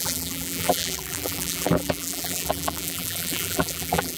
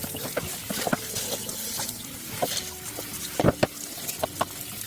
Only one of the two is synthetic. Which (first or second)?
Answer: first